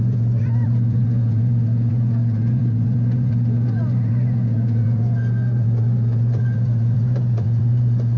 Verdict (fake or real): fake